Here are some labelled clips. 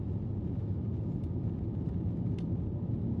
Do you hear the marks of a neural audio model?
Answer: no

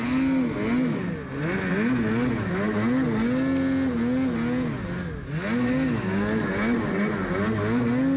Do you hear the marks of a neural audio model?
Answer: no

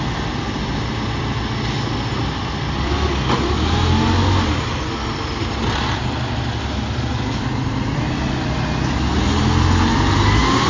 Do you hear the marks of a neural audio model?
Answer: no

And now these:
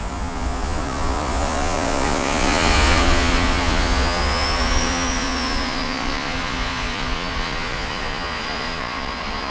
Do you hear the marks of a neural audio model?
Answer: yes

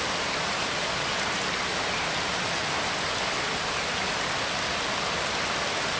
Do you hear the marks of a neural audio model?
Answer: no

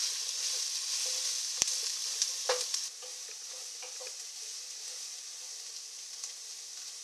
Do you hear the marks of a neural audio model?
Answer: no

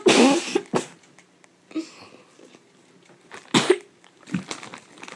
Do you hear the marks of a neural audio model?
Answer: no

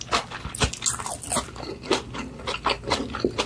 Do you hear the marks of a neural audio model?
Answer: no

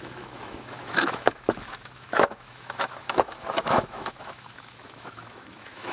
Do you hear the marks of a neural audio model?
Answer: yes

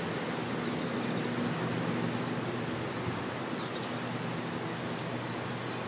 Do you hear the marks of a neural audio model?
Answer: no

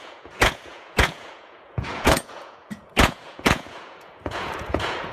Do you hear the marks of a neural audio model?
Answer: yes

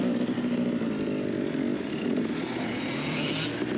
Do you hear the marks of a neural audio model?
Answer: no